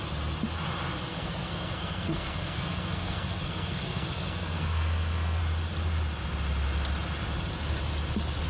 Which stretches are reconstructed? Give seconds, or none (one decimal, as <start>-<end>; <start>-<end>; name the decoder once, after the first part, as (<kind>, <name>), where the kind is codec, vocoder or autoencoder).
1.1-5.4 (codec, SNAC)